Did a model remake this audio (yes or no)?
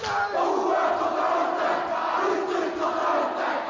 no